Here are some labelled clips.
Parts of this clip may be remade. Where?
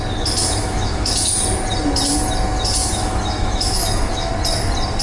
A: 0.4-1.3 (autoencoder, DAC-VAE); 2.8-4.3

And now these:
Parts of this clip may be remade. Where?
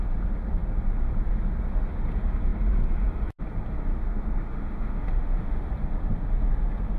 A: 3.9-5.7 (autoencoder, DAC-VAE)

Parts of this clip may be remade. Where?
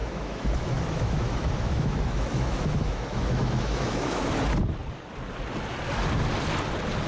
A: 0.0-4.3 (autoencoder, DAC-VAE)